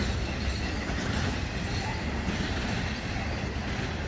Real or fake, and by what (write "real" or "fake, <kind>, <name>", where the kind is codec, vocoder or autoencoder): real